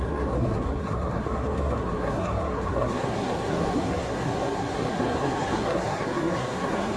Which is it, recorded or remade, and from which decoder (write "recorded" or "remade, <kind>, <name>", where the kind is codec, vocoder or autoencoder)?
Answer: remade, codec, SNAC